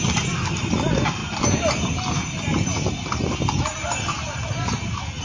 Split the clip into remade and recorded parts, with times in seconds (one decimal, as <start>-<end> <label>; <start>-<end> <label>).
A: 0.0-5.2 recorded